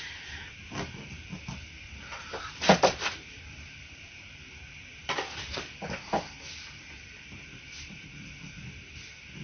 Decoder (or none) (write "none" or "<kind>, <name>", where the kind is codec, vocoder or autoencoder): vocoder, BigVGAN v2